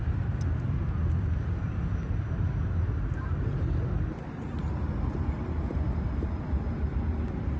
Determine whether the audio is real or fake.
real